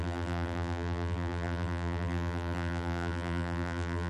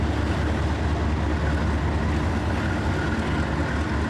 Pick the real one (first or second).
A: second